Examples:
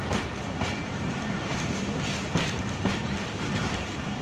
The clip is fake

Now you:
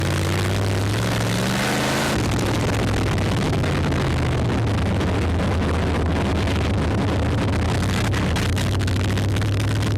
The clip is real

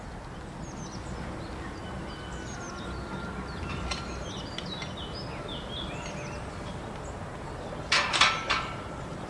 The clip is real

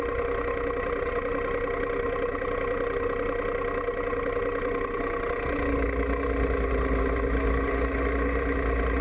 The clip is real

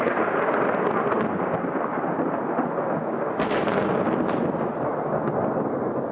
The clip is real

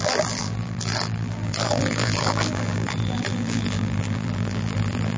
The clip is fake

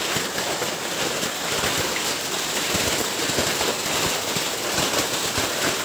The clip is fake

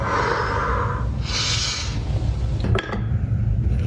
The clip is real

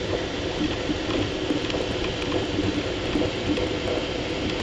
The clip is real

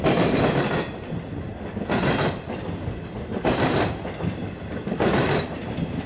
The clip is real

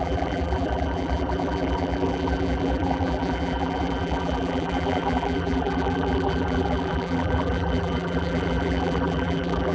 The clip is fake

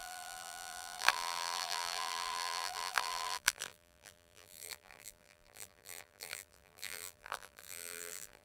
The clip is fake